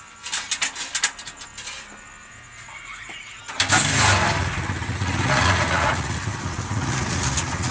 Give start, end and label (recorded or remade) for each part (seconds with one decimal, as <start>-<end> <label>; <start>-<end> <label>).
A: 0.0-2.2 recorded; 2.2-3.4 remade; 3.4-4.4 recorded; 4.4-7.7 remade